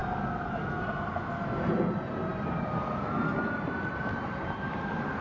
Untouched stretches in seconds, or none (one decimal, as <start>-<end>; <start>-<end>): 0.0-5.2